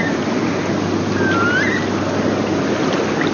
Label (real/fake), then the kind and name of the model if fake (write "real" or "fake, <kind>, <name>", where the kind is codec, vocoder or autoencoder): real